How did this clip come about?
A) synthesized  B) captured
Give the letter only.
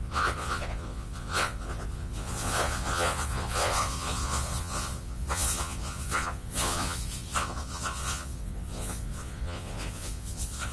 A